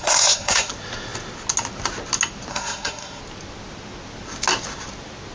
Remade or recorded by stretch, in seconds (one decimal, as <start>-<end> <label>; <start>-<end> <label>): 0.0-0.7 remade; 0.7-2.5 recorded; 2.5-3.2 remade; 3.2-5.3 recorded